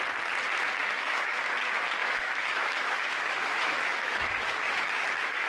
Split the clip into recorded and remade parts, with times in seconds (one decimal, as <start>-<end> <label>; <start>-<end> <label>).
0.0-0.8 recorded; 0.8-1.4 remade; 1.4-2.0 recorded; 2.0-5.5 remade